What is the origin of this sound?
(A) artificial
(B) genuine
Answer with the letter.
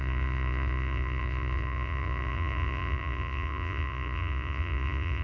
A